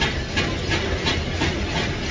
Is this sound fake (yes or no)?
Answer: no